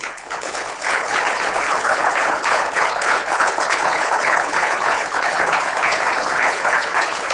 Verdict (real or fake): fake